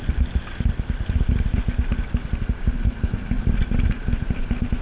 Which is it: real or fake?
real